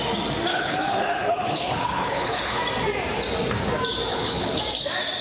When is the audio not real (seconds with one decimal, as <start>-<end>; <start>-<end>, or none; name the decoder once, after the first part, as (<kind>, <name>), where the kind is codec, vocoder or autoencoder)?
0.5-2.6 (codec, HILCodec); 4.1-4.6